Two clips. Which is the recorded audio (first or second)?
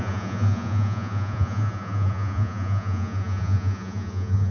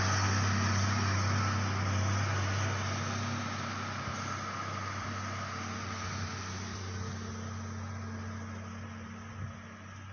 second